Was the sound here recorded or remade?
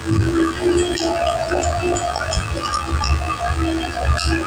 remade